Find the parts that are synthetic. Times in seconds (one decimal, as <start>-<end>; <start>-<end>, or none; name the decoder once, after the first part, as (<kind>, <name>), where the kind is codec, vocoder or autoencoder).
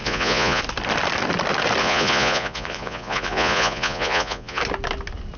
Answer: 0.0-0.6 (vocoder, Vocos); 1.8-4.6